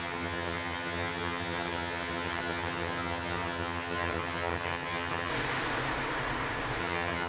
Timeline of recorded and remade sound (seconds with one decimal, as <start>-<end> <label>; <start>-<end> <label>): 0.0-5.3 remade; 5.3-6.8 recorded; 6.8-7.3 remade